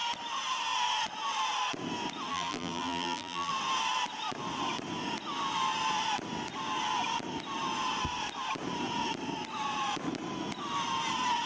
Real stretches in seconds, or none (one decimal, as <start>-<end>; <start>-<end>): 0.0-2.3; 3.5-11.5